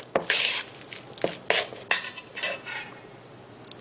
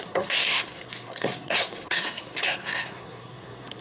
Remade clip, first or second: second